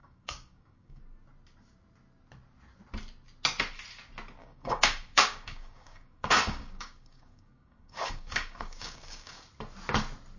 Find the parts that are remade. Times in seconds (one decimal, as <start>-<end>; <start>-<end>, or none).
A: 0.0-1.0; 4.4-9.4